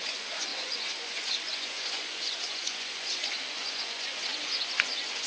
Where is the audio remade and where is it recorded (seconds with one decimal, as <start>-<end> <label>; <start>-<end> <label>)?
0.0-5.3 remade